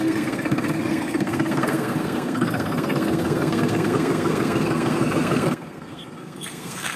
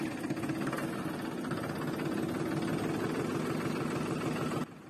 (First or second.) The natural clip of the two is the second